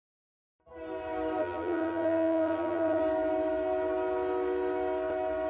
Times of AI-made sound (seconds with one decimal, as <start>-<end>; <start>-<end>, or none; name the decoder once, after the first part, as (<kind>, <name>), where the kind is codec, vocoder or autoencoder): 1.4-3.0 (vocoder, BigVGAN v2)